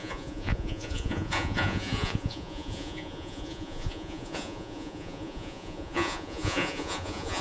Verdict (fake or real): fake